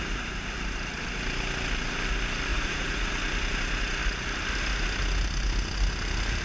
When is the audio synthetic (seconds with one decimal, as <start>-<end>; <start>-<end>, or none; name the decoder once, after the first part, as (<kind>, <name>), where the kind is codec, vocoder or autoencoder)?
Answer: 2.5-3.1 (vocoder, Vocos)

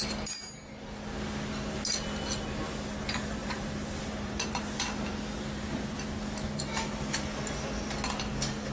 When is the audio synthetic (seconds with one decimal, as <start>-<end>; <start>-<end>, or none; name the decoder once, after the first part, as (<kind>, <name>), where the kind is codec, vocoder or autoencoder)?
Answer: 3.4-4.5 (vocoder, BigVGAN v2)

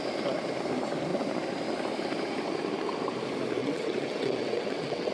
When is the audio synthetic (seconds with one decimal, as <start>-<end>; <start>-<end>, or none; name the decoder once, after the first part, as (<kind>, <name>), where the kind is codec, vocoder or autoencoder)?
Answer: 3.6-5.1 (vocoder, WaveNeXt)